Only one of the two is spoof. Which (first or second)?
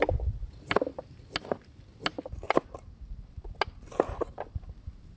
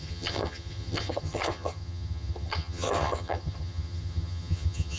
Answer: second